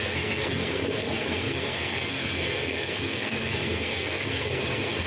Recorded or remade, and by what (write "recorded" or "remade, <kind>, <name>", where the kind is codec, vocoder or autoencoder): remade, codec, SNAC